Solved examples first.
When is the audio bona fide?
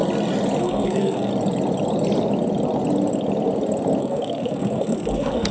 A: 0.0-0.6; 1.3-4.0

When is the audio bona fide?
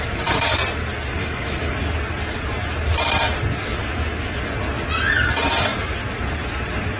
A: 0.0-1.2; 1.7-3.7; 4.4-7.0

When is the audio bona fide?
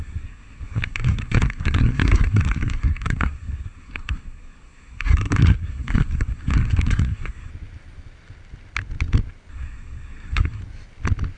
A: 7.5-9.5; 10.6-11.4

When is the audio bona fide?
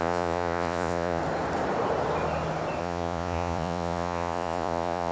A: 1.2-2.8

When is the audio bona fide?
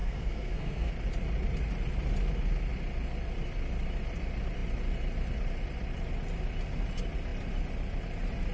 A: 0.9-8.5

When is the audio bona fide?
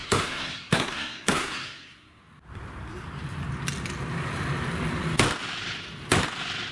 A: 2.2-6.7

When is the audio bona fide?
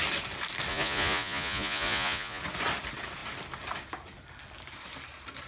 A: 0.0-0.7; 2.4-5.5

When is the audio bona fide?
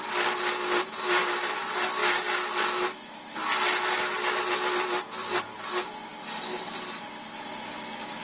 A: 0.0-8.2